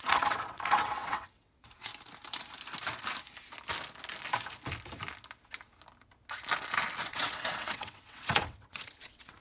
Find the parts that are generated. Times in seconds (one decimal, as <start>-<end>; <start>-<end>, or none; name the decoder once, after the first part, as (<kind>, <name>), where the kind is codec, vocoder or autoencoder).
0.0-1.9 (vocoder, WaveNeXt); 7.0-9.4